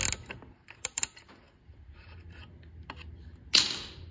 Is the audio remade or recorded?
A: recorded